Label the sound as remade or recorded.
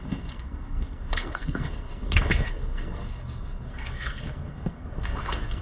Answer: remade